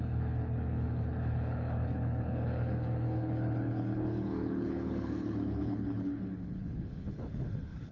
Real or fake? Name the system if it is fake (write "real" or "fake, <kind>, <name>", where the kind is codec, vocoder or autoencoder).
fake, codec, HILCodec